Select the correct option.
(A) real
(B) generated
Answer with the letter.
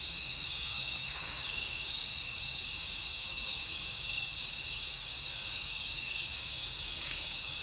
B